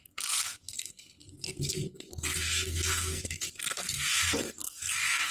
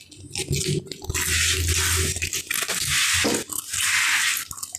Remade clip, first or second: first